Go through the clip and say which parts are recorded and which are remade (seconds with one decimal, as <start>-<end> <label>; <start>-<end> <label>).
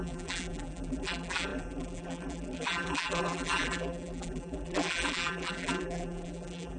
0.0-6.8 remade